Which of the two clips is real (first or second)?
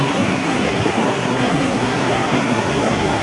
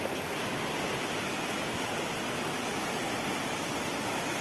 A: second